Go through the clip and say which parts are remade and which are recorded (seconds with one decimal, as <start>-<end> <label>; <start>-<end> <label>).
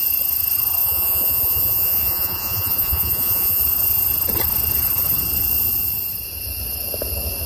0.0-0.8 recorded; 0.8-3.6 remade; 3.6-7.5 recorded